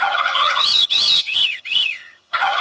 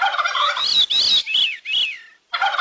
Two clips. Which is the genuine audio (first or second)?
second